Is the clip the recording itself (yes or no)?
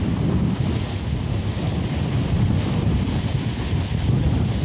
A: yes